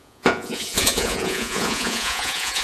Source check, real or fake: fake